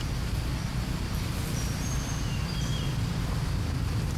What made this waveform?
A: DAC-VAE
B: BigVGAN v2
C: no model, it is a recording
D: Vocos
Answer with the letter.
C